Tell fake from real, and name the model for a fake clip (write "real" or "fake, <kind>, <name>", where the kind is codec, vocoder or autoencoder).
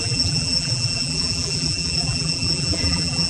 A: fake, vocoder, BigVGAN v2